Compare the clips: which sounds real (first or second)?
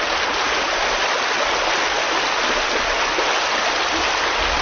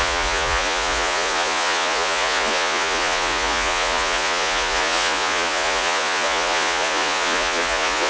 first